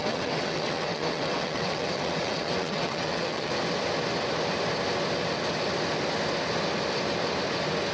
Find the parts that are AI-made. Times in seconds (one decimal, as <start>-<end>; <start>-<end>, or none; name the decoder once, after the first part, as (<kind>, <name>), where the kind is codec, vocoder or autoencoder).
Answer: 0.0-3.5 (vocoder, WaveNeXt)